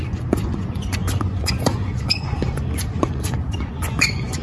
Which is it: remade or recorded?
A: remade